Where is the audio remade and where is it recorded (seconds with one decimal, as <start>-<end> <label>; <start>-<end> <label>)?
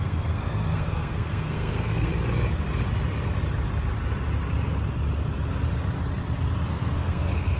0.0-2.1 remade; 2.1-6.7 recorded; 6.7-7.6 remade